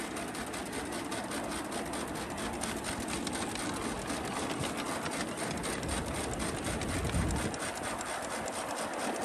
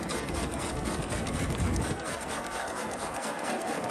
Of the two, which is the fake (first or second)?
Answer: second